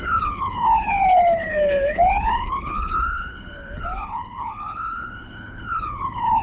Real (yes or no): no